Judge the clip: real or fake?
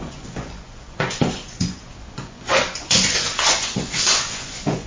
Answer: fake